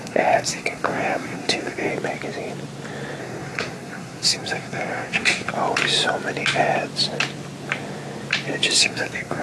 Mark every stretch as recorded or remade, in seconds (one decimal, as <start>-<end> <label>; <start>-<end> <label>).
0.0-1.9 remade; 1.9-3.2 recorded; 3.2-5.5 remade; 5.5-8.8 recorded; 8.8-9.4 remade